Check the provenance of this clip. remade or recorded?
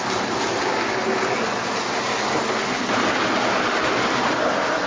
recorded